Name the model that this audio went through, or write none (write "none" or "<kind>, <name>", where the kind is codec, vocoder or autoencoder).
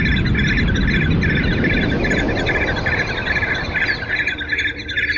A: none